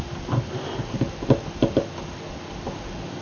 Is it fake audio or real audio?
real